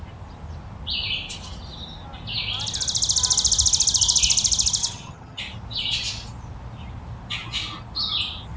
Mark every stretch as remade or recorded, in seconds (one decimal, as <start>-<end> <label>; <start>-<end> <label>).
0.0-4.8 recorded; 4.8-5.4 remade; 5.4-8.6 recorded